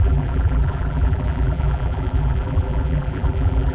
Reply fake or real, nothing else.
fake